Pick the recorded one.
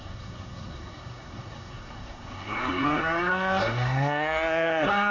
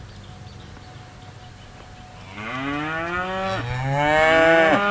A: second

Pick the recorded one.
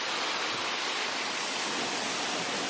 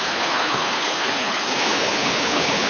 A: first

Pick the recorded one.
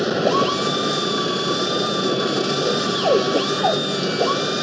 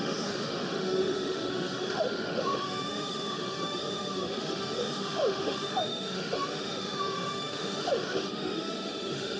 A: first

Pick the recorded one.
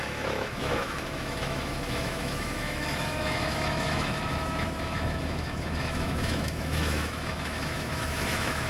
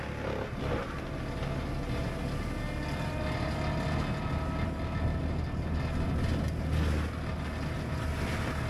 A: second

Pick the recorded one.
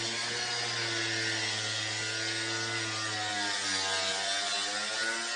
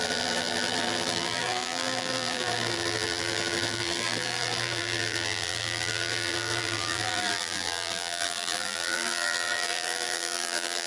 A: first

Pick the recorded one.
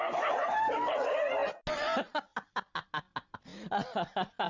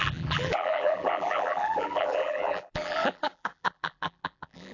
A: first